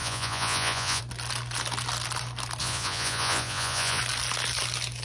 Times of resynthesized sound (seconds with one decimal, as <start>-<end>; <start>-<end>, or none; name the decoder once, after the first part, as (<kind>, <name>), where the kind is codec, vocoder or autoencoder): 0.0-1.0 (vocoder, Vocos); 2.6-4.0